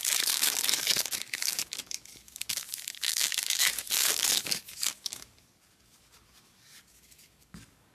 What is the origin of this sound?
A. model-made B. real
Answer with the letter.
A